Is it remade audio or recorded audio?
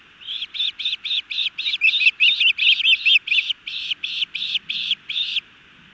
recorded